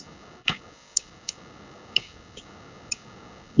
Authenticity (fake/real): fake